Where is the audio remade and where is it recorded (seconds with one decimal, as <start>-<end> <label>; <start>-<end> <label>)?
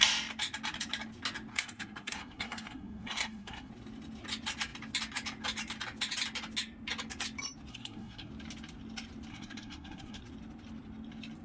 0.0-1.5 recorded; 1.5-3.7 remade; 3.7-7.7 recorded; 7.7-8.3 remade; 8.3-9.3 recorded; 9.3-10.2 remade; 10.2-11.4 recorded